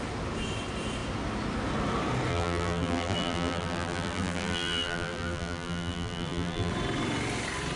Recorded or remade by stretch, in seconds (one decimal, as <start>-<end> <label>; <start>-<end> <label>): 0.0-2.3 recorded; 2.3-6.7 remade; 6.7-7.8 recorded